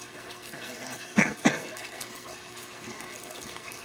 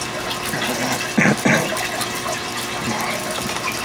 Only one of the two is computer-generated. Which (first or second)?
first